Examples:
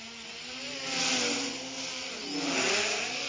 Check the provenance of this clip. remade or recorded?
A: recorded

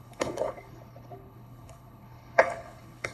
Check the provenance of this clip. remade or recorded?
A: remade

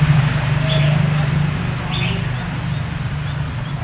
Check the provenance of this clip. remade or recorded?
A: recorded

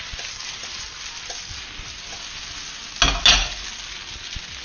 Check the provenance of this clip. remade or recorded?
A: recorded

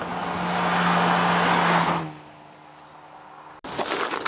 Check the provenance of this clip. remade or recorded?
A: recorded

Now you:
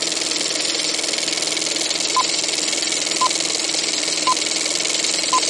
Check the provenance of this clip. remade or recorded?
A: recorded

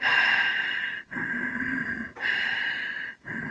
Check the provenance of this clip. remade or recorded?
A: recorded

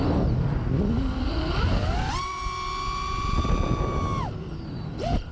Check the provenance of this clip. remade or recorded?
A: recorded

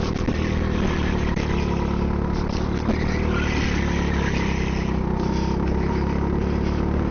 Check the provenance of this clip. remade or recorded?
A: recorded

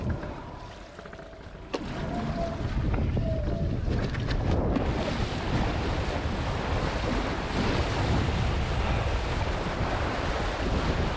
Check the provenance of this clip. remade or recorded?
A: recorded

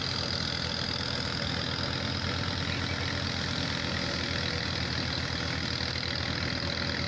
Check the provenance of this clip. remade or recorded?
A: recorded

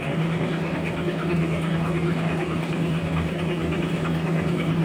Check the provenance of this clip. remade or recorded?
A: remade